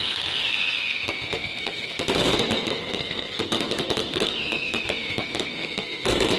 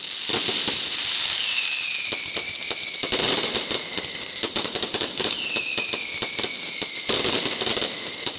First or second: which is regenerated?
first